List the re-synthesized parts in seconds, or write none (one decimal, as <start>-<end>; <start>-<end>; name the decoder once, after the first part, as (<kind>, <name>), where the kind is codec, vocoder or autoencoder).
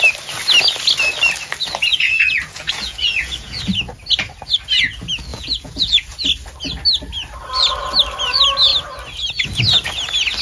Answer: 1.9-3.6 (vocoder, Vocos); 5.3-6.2